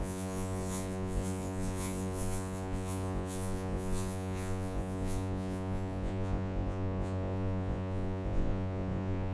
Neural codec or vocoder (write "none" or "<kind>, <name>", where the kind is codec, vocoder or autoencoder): vocoder, Vocos